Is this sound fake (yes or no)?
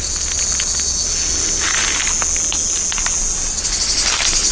no